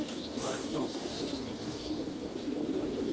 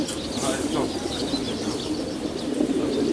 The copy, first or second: first